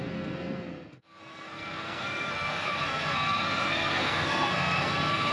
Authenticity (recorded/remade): remade